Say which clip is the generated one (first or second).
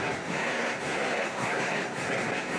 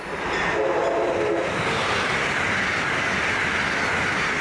first